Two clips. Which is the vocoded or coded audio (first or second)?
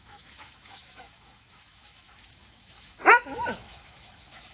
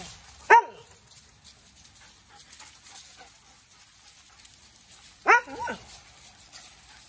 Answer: first